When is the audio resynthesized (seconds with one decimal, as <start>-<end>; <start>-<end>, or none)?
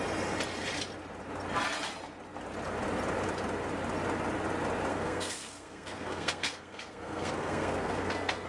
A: 4.9-8.5